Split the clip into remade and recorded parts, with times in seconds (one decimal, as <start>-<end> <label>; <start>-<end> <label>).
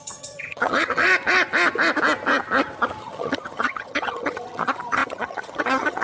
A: 0.0-1.1 remade; 1.1-3.0 recorded; 3.0-6.0 remade